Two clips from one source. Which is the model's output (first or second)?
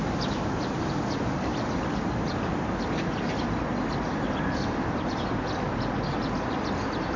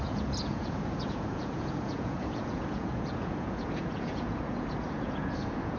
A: second